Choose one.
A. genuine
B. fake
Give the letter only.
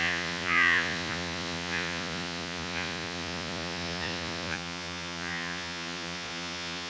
B